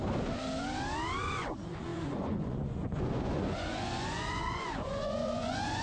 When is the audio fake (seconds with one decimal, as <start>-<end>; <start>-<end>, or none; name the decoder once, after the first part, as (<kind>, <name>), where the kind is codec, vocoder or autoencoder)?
1.2-5.8 (vocoder, Vocos)